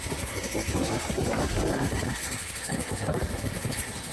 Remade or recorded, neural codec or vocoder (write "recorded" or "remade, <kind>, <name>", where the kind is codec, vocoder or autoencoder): remade, codec, SNAC